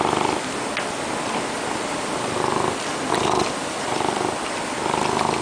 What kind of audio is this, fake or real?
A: real